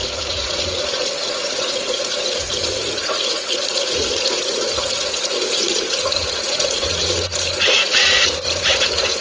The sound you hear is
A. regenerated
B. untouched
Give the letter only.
A